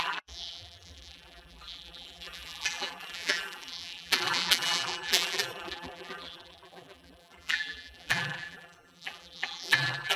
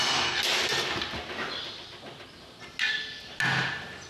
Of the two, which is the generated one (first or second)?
first